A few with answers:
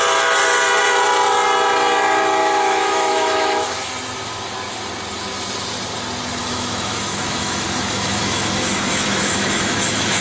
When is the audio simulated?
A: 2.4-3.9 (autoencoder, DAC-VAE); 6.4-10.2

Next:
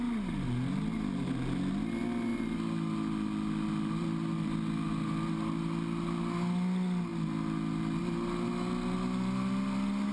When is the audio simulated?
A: none

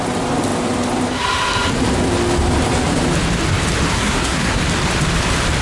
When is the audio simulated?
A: 3.9-4.6 (codec, SNAC)

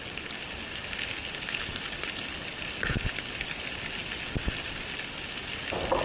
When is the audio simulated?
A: none

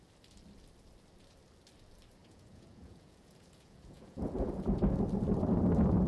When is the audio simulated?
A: 2.2-4.6 (vocoder, Vocos)